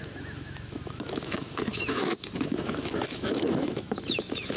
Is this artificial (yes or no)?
yes